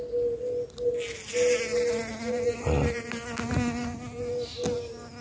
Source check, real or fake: real